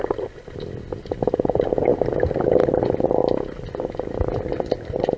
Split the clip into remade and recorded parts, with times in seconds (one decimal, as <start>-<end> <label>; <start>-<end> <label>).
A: 0.0-5.2 recorded